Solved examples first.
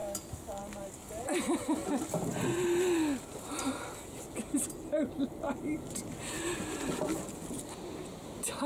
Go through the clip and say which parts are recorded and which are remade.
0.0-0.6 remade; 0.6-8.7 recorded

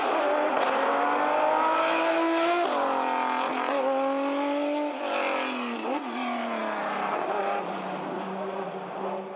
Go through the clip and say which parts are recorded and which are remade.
0.0-9.4 recorded

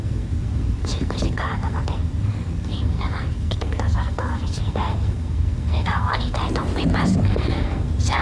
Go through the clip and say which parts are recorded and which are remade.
0.0-6.4 remade; 6.4-7.2 recorded; 7.2-8.2 remade

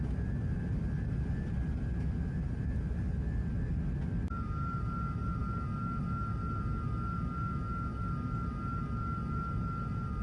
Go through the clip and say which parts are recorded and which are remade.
0.0-10.2 recorded